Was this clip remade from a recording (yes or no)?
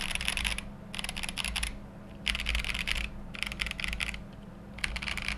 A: no